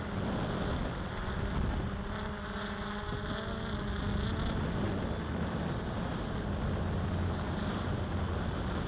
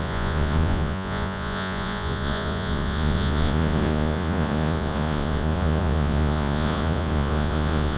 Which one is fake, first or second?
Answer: second